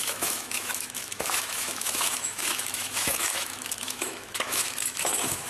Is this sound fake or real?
fake